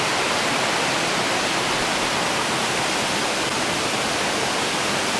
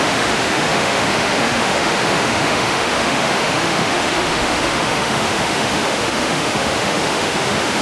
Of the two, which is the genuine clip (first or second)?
first